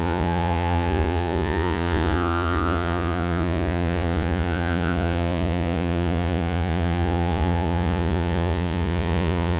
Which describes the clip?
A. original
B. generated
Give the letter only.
B